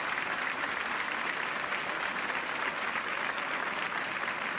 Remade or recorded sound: recorded